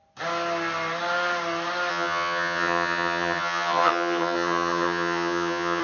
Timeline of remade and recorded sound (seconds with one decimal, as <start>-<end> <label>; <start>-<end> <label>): 0.0-1.9 recorded; 1.9-5.8 remade